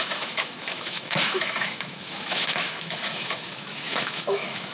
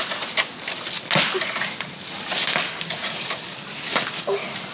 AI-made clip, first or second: first